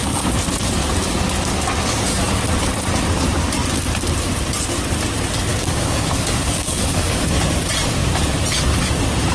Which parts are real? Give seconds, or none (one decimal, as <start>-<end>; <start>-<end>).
0.0-5.5; 7.2-9.3